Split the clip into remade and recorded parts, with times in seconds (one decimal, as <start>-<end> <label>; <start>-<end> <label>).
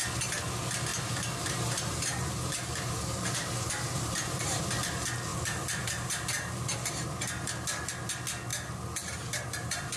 0.0-0.9 recorded; 0.9-4.6 remade; 4.6-5.3 recorded; 5.3-6.5 remade; 6.5-8.5 recorded; 8.5-10.0 remade